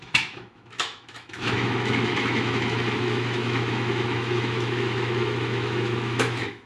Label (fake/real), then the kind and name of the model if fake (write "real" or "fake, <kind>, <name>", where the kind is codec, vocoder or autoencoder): fake, autoencoder, DAC-VAE